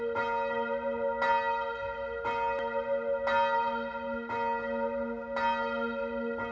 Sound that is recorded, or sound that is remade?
recorded